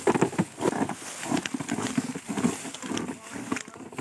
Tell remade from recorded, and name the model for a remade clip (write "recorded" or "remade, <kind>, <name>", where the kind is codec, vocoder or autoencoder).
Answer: recorded